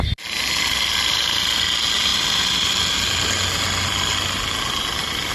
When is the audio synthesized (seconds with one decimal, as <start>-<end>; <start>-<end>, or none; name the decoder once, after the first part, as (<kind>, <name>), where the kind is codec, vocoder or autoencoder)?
none